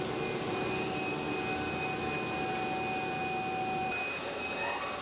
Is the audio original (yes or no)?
yes